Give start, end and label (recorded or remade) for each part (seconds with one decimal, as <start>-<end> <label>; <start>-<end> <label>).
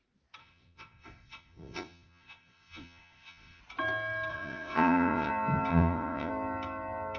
0.0-0.4 recorded; 0.4-3.6 remade; 3.6-4.3 recorded; 4.3-5.3 remade; 5.3-5.7 recorded; 5.7-6.3 remade; 6.3-7.2 recorded